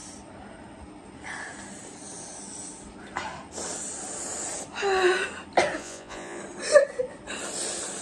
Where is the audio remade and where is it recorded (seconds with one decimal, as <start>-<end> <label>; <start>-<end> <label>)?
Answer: 0.0-5.8 recorded; 5.8-6.4 remade; 6.4-8.0 recorded